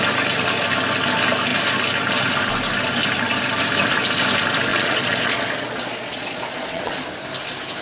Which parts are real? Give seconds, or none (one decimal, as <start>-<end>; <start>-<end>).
0.0-4.7; 6.9-7.8